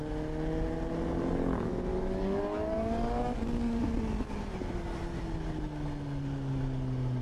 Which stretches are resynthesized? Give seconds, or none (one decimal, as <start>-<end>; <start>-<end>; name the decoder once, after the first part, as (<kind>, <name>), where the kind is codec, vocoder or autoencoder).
1.9-3.8 (codec, DAC)